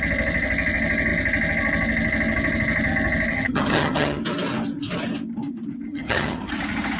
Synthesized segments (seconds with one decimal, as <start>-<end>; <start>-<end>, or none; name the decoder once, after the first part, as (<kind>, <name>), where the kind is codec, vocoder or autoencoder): 3.3-4.2 (vocoder, HiFi-GAN); 5.9-6.5